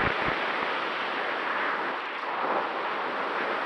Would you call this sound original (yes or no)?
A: yes